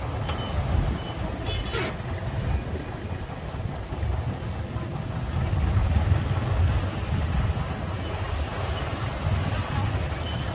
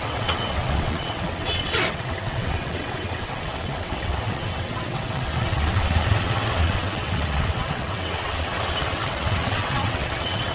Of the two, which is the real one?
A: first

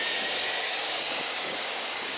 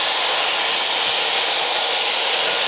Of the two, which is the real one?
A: second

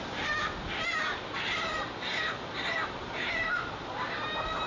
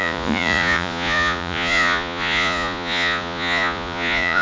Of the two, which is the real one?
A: first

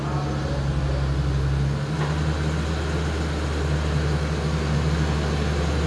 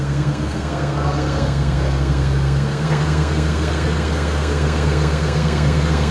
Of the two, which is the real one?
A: first